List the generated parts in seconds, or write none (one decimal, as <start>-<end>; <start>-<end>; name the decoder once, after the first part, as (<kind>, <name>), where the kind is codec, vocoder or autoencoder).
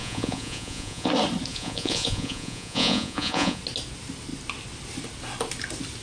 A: 0.0-1.1 (vocoder, Vocos); 1.5-3.6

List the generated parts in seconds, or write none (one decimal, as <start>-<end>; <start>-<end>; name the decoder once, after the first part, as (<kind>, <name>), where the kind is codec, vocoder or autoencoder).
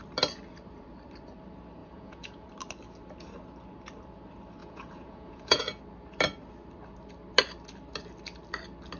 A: 1.8-2.5 (vocoder, Vocos); 4.6-5.8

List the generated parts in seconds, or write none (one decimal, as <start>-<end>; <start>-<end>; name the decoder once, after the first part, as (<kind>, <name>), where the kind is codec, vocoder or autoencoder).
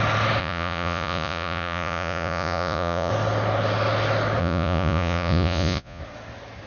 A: 0.4-3.1 (vocoder, Vocos); 4.4-6.0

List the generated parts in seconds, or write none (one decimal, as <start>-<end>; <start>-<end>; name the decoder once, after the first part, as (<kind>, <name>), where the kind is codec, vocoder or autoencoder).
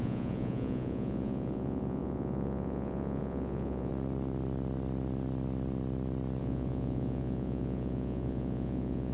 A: 0.0-3.9 (vocoder, Vocos); 6.4-9.1